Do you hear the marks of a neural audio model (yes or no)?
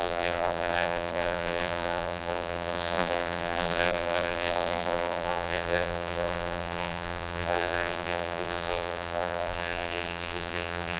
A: yes